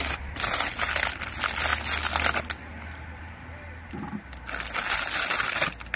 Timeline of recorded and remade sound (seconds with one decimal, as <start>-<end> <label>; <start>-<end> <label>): 0.0-6.0 recorded